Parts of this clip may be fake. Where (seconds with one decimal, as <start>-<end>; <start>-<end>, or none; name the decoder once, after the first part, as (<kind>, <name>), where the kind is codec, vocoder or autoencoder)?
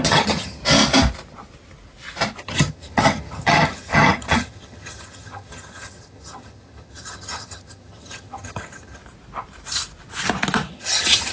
0.0-0.6 (vocoder, HiFi-GAN); 2.4-9.0; 10.7-11.3